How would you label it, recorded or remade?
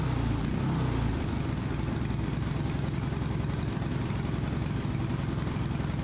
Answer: recorded